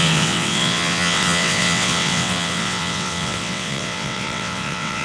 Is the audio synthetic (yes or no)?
yes